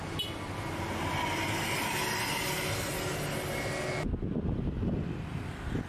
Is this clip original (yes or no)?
yes